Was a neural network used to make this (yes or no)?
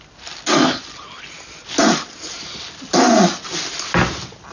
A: no